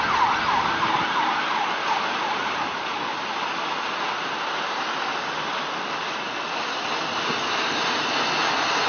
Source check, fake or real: real